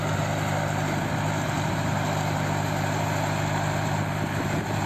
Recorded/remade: recorded